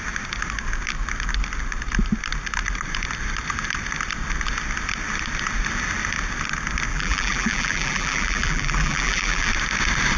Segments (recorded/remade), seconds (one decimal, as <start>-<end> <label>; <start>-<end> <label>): 0.0-6.9 recorded; 6.9-9.5 remade; 9.5-10.2 recorded